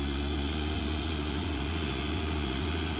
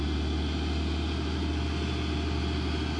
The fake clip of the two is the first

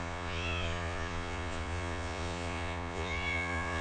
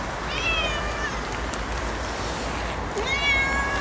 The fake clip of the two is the first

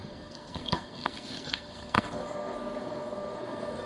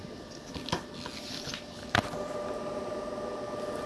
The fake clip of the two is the first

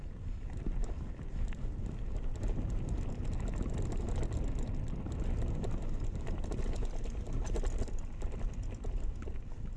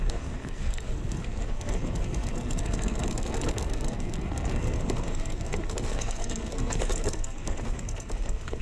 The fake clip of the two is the second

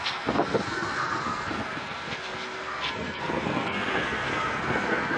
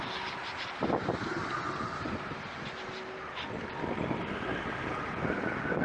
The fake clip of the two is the first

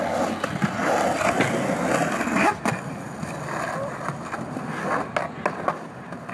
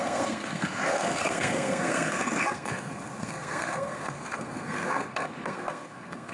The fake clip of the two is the second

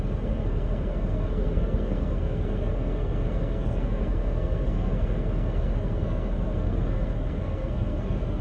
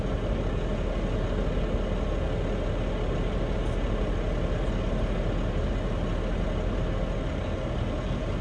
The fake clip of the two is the first